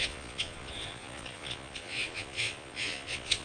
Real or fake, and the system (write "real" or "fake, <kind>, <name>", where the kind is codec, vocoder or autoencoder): fake, vocoder, Vocos